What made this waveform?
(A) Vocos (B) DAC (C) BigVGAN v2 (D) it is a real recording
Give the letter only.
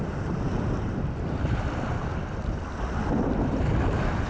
D